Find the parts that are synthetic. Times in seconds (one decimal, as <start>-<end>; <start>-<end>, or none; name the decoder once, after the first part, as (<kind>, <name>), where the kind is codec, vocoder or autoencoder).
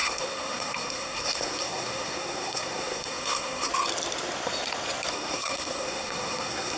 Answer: 0.0-3.7 (codec, SNAC); 5.1-6.8